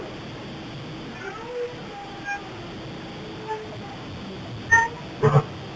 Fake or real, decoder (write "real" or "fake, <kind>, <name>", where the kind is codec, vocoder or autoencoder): real